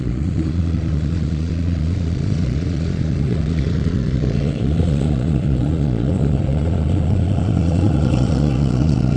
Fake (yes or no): yes